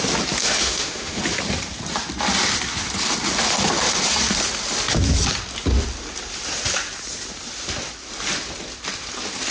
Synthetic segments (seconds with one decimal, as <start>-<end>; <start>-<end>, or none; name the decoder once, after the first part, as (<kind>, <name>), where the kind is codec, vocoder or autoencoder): 0.4-1.2 (autoencoder, DAC-VAE)